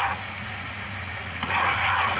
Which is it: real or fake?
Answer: fake